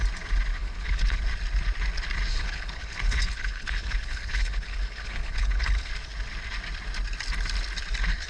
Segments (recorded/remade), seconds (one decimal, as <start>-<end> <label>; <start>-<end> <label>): 0.0-0.5 recorded; 0.5-1.2 remade; 1.2-2.3 recorded; 2.3-5.9 remade; 5.9-8.3 recorded